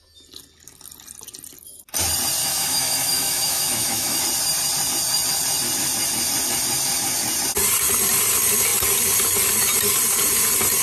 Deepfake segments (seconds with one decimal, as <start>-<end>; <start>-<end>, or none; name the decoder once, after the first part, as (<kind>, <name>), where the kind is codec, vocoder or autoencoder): 2.4-4.2 (autoencoder, DAC-VAE)